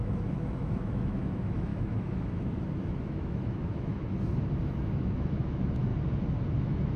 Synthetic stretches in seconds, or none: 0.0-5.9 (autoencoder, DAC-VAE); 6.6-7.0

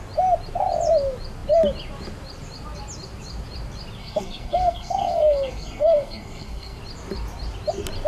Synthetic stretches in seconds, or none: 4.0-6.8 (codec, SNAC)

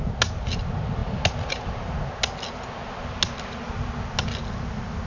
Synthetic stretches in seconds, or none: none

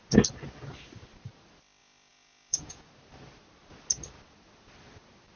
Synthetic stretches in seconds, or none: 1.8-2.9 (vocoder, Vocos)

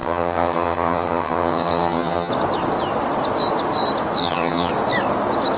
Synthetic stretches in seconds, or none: 0.0-2.3 (vocoder, HiFi-GAN); 4.2-4.7